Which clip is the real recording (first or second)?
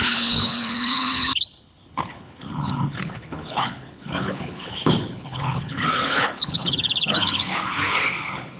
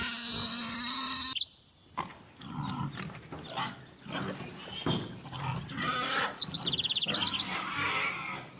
second